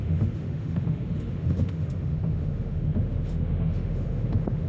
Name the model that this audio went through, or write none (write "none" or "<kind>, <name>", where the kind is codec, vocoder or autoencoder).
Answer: autoencoder, DAC-VAE